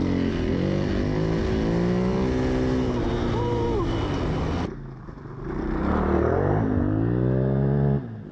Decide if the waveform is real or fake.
real